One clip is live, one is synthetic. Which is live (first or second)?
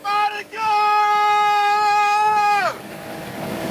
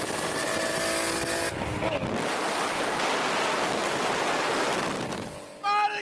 second